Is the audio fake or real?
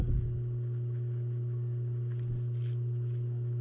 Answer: real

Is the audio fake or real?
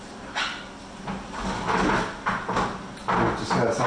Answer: real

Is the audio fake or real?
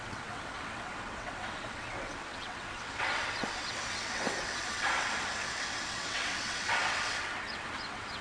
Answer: fake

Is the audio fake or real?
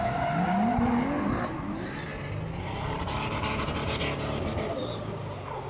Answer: real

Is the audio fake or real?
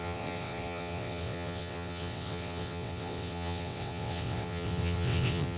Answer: fake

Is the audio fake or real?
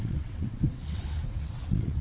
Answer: fake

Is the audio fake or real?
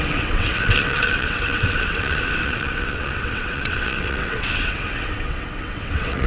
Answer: fake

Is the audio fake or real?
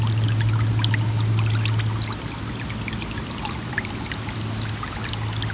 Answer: real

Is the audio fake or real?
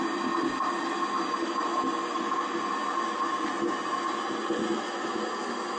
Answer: real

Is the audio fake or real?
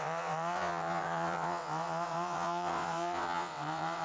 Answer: fake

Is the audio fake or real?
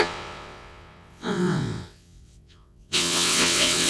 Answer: fake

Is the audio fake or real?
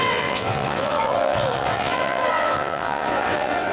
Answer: fake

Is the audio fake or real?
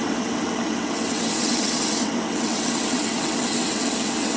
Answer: fake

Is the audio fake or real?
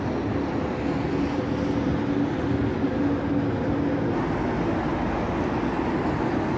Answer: real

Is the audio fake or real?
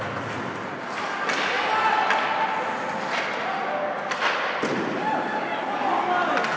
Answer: real